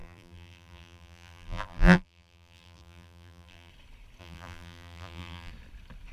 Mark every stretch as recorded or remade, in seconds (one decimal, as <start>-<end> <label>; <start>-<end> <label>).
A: 0.0-3.7 remade; 3.7-4.2 recorded; 4.2-5.5 remade; 5.5-6.1 recorded